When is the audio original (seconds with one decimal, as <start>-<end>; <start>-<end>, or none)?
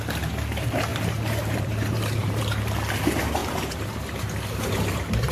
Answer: 0.0-0.9; 2.4-3.4; 3.9-5.3